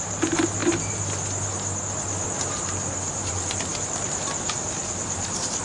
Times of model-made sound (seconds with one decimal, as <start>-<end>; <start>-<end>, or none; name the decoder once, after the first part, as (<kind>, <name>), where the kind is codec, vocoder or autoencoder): none